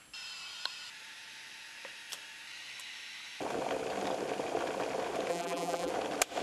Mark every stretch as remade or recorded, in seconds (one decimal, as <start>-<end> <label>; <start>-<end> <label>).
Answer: 0.0-5.3 recorded; 5.3-5.9 remade; 5.9-6.4 recorded